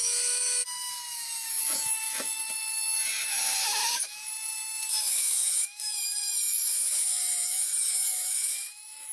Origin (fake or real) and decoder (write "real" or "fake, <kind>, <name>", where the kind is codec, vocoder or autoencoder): fake, autoencoder, DAC-VAE